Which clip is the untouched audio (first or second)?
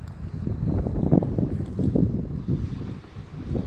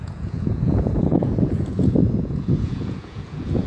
first